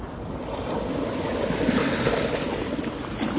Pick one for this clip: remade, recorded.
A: recorded